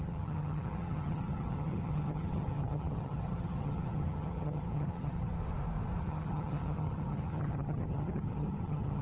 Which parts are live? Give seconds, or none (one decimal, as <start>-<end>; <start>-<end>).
5.3-6.0